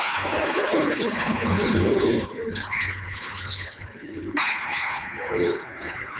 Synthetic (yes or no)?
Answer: yes